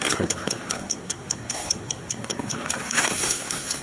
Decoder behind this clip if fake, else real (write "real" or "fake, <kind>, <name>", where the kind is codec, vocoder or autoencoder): fake, codec, SNAC